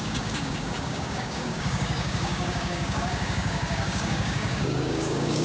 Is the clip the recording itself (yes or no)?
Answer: no